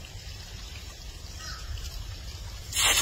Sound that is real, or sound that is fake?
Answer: real